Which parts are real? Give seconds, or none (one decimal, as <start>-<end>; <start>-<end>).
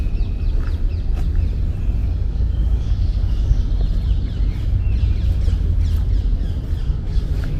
0.0-2.0; 3.6-6.8